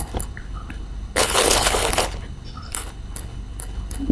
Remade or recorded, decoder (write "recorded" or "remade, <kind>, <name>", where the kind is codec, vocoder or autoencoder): remade, codec, HILCodec